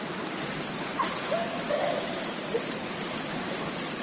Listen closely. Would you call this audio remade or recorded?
remade